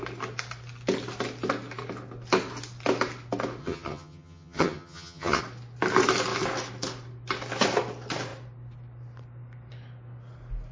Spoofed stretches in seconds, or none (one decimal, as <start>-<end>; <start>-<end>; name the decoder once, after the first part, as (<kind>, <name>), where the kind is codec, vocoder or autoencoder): 3.6-5.4 (vocoder, HiFi-GAN)